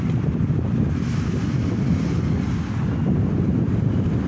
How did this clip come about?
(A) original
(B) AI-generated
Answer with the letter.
A